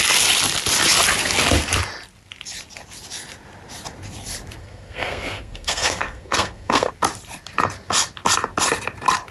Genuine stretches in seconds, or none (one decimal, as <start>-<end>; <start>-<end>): 0.0-4.6; 6.9-9.3